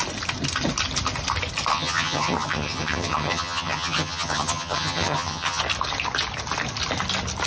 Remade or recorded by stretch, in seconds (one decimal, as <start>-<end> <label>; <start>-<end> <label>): 0.0-1.7 recorded; 1.7-5.6 remade; 5.6-7.5 recorded